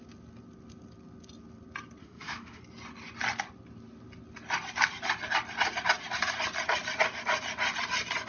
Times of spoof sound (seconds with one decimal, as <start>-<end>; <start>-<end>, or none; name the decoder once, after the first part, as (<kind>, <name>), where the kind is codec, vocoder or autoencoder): 2.0-2.6 (autoencoder, DAC-VAE)